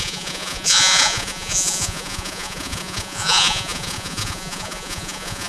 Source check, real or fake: fake